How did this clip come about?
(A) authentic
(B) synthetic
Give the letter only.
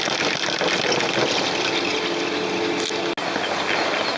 A